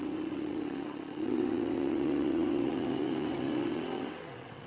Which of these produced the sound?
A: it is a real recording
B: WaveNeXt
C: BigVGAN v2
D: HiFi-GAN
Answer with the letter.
B